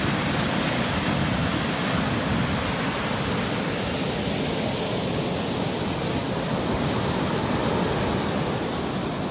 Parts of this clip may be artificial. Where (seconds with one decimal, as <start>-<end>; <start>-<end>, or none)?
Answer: none